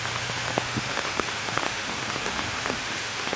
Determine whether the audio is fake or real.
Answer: fake